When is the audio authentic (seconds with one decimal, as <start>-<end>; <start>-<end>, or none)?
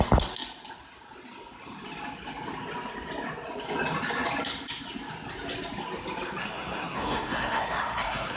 0.0-6.4